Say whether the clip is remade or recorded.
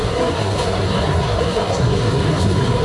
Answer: remade